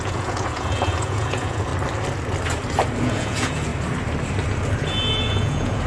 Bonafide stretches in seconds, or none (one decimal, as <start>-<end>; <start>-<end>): 1.7-3.0; 3.7-4.8